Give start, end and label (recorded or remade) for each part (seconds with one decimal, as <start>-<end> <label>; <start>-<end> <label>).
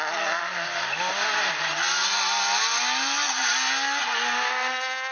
0.0-5.1 recorded